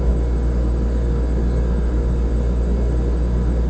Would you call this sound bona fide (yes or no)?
yes